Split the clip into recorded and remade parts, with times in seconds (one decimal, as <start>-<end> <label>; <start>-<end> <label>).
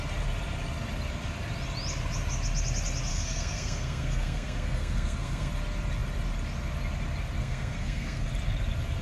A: 0.0-3.1 recorded; 3.1-5.5 remade; 5.5-7.4 recorded; 7.4-8.3 remade; 8.3-9.0 recorded